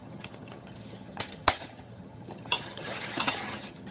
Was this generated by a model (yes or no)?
yes